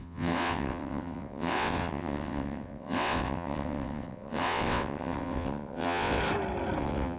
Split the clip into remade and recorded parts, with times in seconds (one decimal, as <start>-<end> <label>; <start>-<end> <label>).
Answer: 0.0-6.2 remade; 6.2-6.8 recorded; 6.8-7.2 remade

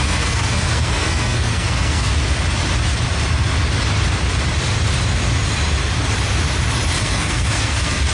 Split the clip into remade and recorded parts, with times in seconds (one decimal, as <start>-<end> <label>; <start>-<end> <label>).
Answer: 0.0-2.1 remade; 2.1-7.0 recorded; 7.0-8.1 remade

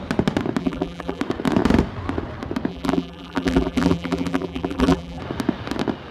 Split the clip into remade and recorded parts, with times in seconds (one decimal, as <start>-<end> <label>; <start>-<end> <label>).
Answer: 0.0-0.6 recorded; 0.6-1.2 remade; 1.2-2.7 recorded; 2.7-5.2 remade; 5.2-6.1 recorded

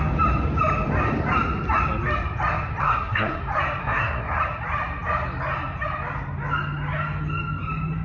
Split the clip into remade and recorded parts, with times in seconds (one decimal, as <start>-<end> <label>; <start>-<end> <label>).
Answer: 0.0-2.8 recorded; 2.8-3.4 remade; 3.4-3.8 recorded; 3.8-4.4 remade; 4.4-8.0 recorded

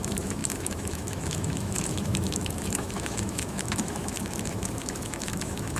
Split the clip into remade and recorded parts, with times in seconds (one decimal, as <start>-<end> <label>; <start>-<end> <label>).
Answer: 0.0-5.8 remade

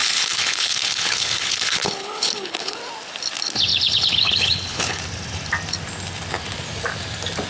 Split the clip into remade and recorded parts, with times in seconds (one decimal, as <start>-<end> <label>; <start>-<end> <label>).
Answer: 0.0-2.8 remade; 2.8-3.7 recorded; 3.7-5.0 remade; 5.0-7.5 recorded